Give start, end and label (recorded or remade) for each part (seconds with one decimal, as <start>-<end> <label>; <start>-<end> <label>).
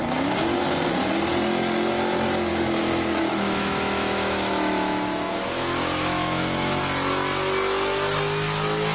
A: 0.0-2.5 recorded; 2.5-6.8 remade; 6.8-8.9 recorded